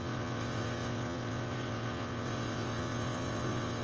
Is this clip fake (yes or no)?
yes